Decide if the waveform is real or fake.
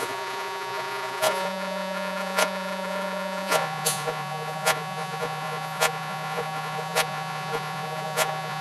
fake